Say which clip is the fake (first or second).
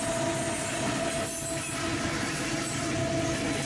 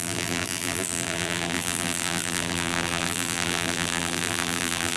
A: second